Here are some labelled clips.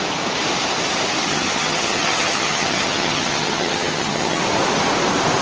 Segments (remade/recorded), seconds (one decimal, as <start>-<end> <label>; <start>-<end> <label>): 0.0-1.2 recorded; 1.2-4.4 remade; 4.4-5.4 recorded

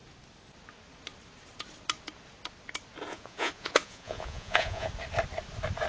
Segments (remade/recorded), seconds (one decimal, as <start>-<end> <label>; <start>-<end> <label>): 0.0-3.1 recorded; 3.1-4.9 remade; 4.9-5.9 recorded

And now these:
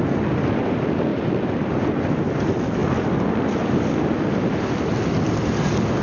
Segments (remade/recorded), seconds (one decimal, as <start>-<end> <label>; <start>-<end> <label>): 0.0-6.0 recorded

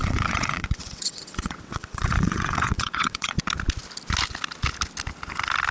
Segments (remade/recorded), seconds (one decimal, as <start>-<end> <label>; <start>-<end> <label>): 0.0-3.4 remade; 3.4-5.7 recorded